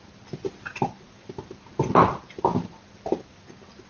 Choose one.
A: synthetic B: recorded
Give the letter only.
B